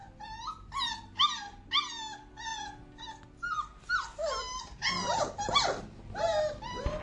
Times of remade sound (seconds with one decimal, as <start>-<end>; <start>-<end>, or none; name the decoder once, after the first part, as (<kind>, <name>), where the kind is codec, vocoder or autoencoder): none